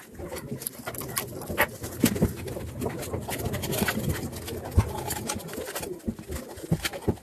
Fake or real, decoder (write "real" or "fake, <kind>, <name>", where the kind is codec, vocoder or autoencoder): real